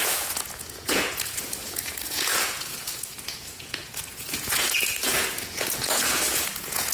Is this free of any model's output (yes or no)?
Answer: no